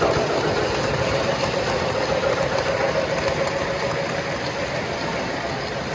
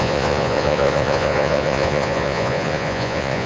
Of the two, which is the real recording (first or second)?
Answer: first